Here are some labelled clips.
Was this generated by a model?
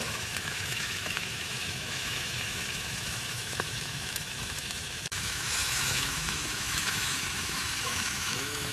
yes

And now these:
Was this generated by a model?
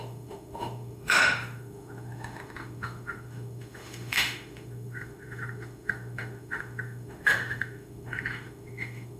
yes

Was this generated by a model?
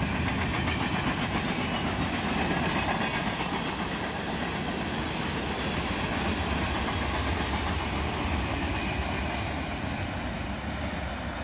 no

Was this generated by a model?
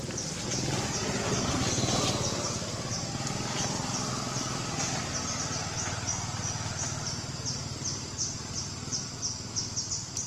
no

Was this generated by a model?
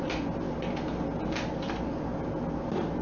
no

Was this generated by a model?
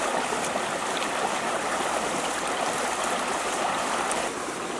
no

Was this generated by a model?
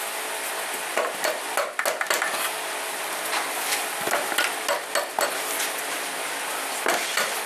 no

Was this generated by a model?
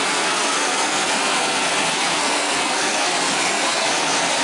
yes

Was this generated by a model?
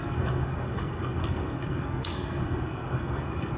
yes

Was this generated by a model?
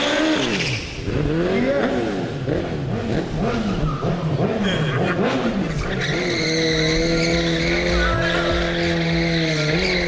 no